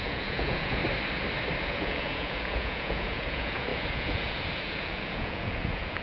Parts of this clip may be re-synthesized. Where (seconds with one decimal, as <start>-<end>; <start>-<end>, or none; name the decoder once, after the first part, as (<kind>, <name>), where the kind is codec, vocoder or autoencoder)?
0.0-0.8 (vocoder, Vocos); 1.6-6.0